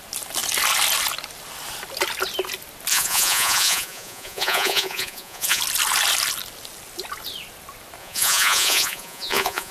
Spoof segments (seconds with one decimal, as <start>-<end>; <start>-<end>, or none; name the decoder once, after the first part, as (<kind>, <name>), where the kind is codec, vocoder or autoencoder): 2.9-5.6 (vocoder, Vocos); 8.0-9.7